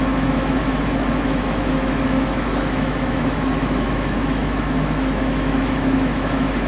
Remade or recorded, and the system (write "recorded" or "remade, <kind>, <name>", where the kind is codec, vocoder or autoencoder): remade, autoencoder, DAC-VAE